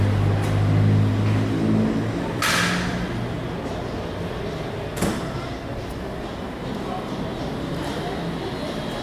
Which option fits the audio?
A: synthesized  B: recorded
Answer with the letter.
B